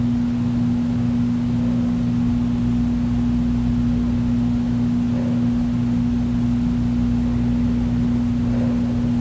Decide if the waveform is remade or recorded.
recorded